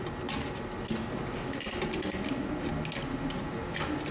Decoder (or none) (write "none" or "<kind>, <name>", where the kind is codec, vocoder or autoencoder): none